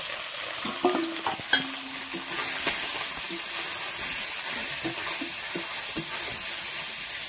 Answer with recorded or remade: recorded